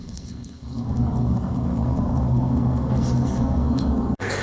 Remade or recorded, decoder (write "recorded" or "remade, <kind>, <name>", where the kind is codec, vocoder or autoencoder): remade, codec, SNAC